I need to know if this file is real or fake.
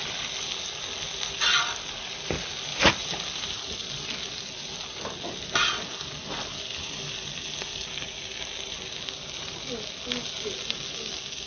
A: real